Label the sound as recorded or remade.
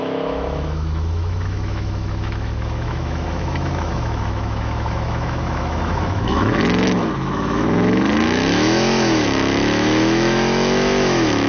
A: remade